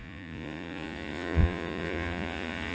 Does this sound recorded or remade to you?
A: remade